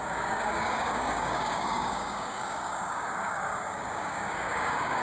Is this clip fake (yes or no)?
yes